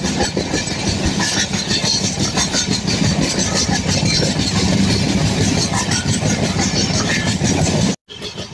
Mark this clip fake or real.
real